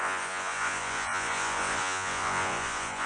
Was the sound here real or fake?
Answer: fake